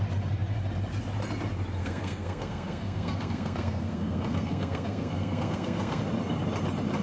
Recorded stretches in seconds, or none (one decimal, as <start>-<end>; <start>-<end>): 0.0-1.8; 6.0-7.0